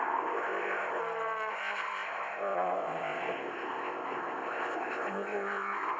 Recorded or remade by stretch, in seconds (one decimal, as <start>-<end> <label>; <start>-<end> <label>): 0.0-1.0 remade; 1.0-1.5 recorded; 1.5-6.0 remade